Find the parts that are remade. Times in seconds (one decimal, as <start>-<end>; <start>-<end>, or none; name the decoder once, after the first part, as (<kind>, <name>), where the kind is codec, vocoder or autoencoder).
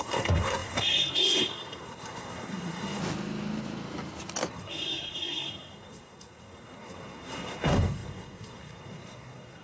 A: 0.0-3.0 (codec, SNAC); 4.5-9.6